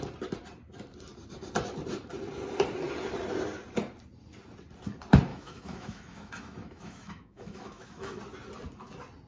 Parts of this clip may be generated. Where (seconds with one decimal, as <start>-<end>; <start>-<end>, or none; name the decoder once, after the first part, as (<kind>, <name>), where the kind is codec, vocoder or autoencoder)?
5.3-8.2 (autoencoder, DAC-VAE)